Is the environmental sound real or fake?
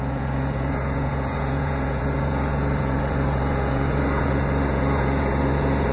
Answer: fake